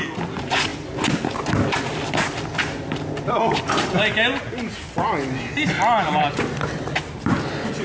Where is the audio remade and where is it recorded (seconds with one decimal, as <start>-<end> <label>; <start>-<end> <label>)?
0.0-7.8 recorded